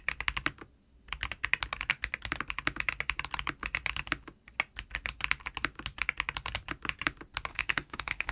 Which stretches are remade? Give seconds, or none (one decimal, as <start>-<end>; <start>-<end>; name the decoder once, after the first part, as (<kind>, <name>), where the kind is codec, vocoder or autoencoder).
7.5-8.3 (autoencoder, DAC-VAE)

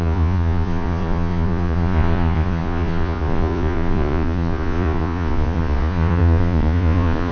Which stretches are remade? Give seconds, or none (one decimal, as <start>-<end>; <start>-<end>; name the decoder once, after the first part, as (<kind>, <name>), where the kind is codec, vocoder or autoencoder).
0.0-7.3 (vocoder, Vocos)